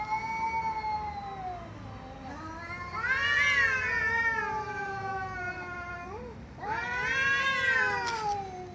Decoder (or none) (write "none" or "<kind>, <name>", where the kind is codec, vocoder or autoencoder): none